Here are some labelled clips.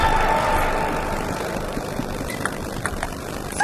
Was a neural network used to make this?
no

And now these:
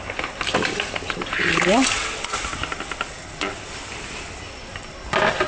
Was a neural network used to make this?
no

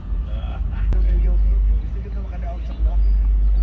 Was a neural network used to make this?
no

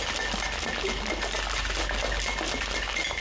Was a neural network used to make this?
no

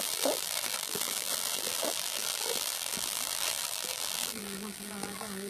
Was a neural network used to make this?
yes